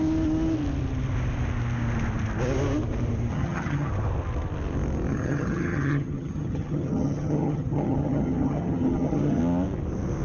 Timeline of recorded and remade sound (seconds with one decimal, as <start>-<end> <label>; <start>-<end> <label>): 0.0-3.3 recorded; 3.3-3.9 remade; 3.9-5.1 recorded; 5.1-9.4 remade; 9.4-10.2 recorded